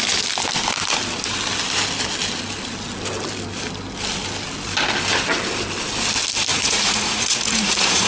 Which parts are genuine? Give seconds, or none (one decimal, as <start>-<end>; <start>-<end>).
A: 0.0-6.5